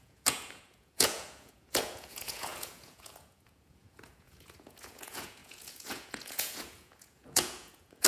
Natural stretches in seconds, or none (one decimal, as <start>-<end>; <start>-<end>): none